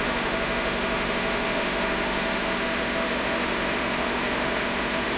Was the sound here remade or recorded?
remade